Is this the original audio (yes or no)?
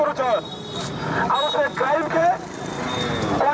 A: yes